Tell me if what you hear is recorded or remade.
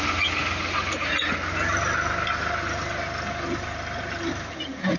recorded